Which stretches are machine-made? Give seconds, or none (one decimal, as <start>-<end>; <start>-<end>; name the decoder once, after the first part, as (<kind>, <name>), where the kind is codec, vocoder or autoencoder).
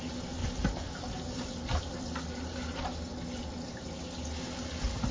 none